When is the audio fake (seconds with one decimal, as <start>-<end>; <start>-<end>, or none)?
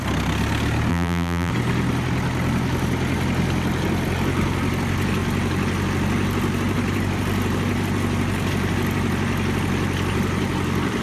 0.9-1.5